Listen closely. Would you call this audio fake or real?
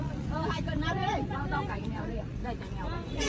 fake